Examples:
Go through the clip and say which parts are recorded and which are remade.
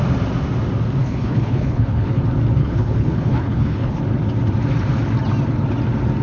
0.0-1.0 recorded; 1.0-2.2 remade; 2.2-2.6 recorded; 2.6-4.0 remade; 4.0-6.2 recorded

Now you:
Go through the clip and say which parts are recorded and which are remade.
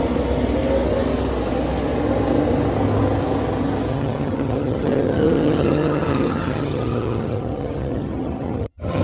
0.0-3.9 recorded; 3.9-9.0 remade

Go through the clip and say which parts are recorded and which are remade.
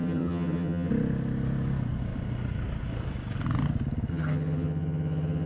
0.0-0.9 remade; 0.9-4.1 recorded; 4.1-5.5 remade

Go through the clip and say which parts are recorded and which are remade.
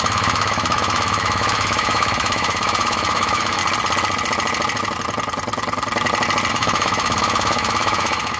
0.0-3.6 remade; 3.6-6.5 recorded; 6.5-8.4 remade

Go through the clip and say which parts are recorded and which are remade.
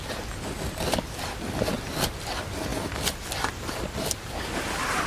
0.0-5.1 recorded